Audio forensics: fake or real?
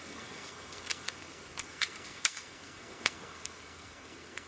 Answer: fake